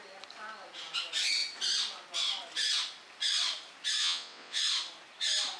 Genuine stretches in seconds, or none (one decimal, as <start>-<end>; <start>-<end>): 0.0-4.0; 4.6-5.6